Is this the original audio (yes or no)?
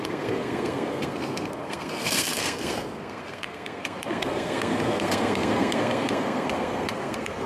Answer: no